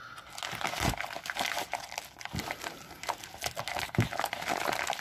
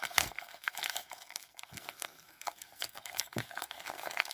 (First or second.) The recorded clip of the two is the first